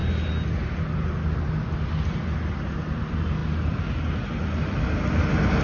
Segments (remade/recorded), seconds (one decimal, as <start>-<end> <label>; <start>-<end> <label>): 0.0-5.6 recorded